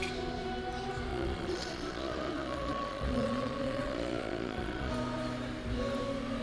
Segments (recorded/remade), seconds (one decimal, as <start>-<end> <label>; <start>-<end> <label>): 0.0-1.1 recorded; 1.1-4.9 remade; 4.9-6.4 recorded